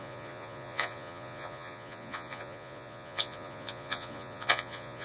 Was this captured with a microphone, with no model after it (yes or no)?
no